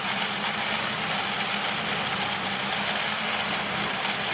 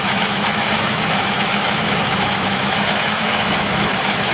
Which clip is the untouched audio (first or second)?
first